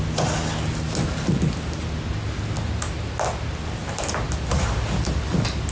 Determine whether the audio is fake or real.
real